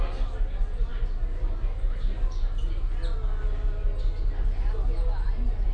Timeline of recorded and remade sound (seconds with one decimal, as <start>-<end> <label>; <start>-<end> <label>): 0.0-5.7 recorded